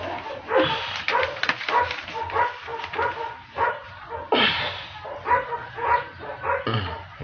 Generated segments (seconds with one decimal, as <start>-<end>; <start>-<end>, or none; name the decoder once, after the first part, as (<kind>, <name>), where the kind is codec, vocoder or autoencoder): 5.6-6.1 (vocoder, Vocos)